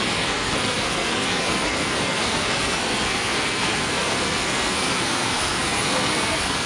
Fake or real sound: fake